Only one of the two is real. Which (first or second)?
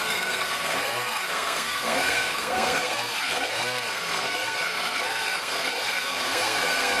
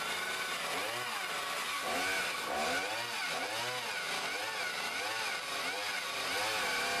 second